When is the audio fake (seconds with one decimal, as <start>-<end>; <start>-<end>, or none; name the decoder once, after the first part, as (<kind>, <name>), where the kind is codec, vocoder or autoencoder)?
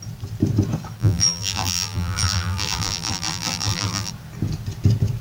1.0-4.1 (vocoder, BigVGAN v2)